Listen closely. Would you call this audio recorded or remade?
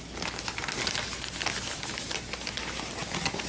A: recorded